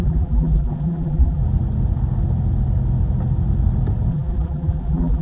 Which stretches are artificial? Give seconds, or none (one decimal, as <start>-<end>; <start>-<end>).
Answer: 0.0-1.4; 4.1-5.2